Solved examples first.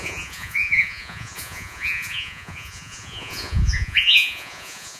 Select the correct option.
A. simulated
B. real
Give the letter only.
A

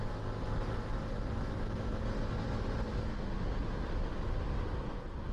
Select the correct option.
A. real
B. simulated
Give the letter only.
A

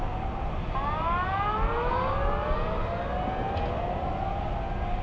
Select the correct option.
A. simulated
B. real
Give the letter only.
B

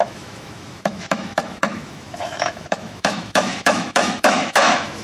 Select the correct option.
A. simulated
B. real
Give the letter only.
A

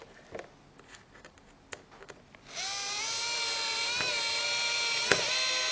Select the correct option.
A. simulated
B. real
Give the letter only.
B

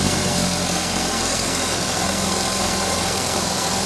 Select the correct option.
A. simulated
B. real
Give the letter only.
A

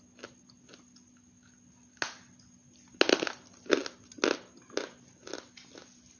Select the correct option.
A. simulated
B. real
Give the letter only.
B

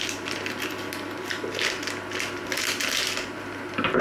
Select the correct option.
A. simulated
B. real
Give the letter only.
B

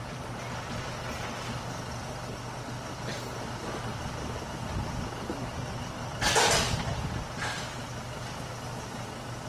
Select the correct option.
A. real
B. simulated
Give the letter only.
A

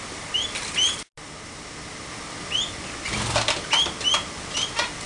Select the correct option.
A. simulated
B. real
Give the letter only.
B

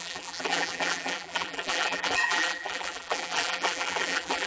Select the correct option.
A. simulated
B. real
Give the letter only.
A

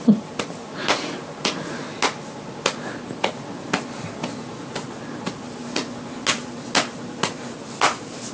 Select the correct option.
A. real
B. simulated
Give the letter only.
A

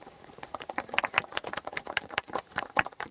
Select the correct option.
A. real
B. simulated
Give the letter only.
B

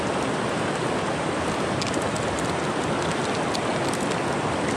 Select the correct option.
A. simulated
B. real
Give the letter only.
B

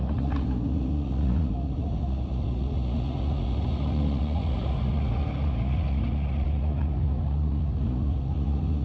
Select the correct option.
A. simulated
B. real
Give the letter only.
A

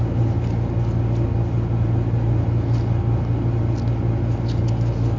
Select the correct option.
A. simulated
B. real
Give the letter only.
B